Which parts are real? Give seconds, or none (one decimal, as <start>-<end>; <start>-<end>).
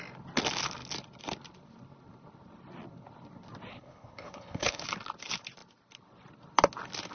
0.0-3.7; 4.8-7.1